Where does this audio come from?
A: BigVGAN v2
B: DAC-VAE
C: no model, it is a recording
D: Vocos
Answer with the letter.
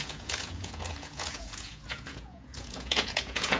D